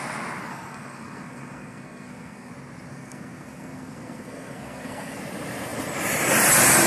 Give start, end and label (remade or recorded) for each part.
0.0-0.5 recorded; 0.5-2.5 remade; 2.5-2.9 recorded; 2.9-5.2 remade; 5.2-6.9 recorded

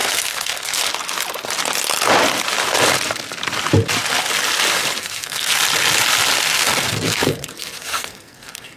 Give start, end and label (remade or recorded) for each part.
0.0-0.9 remade; 0.9-5.0 recorded; 5.0-5.6 remade; 5.6-6.4 recorded; 6.4-8.8 remade

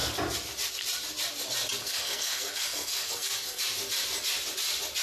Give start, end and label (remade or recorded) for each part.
0.0-1.8 recorded; 1.8-3.6 remade; 3.6-5.0 recorded

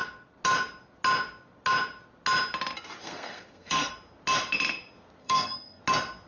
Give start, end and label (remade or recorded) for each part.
0.0-3.0 recorded; 3.0-3.9 remade; 3.9-5.2 recorded; 5.2-5.8 remade; 5.8-6.3 recorded

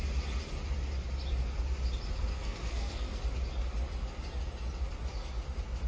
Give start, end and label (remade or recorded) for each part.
0.0-2.3 recorded; 2.3-3.2 remade; 3.2-5.9 recorded

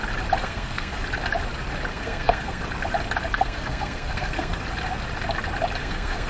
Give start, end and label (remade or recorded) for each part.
0.0-0.4 recorded; 0.4-1.0 remade; 1.0-1.9 recorded; 1.9-2.6 remade; 2.6-3.3 recorded; 3.3-4.6 remade; 4.6-5.8 recorded; 5.8-6.3 remade